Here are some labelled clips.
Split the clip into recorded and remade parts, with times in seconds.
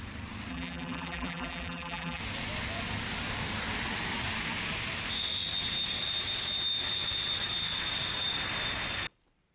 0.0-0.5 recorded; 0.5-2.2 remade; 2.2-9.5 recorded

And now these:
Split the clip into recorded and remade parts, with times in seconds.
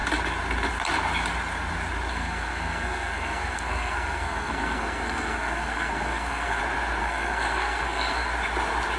0.0-2.1 recorded; 2.1-6.6 remade; 6.6-7.0 recorded; 7.0-8.3 remade; 8.3-9.0 recorded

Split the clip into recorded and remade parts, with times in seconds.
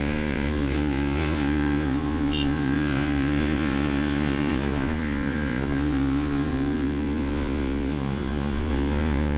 0.0-9.4 remade